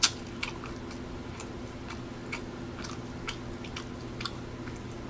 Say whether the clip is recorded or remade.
recorded